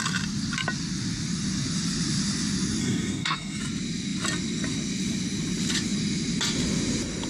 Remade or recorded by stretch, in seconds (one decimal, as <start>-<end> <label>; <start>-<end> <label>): 0.0-2.8 recorded; 2.8-3.6 remade; 3.6-7.3 recorded